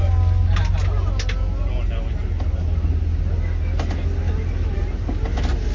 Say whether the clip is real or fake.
real